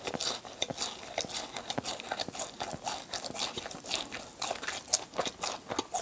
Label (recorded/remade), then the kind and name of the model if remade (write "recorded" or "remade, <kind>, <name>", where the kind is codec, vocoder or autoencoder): recorded